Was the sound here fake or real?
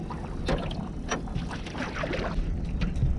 real